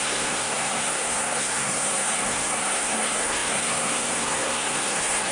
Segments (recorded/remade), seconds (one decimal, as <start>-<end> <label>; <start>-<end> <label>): 0.0-5.3 remade